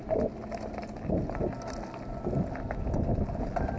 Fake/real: real